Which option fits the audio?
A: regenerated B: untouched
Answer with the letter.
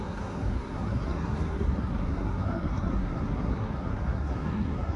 A